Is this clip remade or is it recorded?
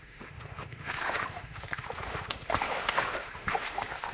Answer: remade